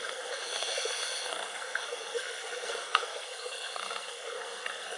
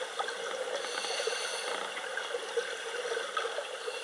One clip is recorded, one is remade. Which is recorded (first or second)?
second